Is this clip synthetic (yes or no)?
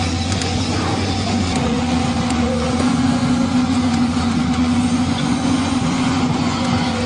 yes